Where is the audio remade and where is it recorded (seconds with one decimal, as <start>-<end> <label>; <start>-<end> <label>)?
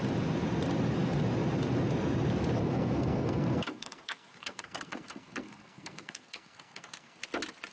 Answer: 0.0-2.6 recorded; 2.6-7.2 remade; 7.2-7.7 recorded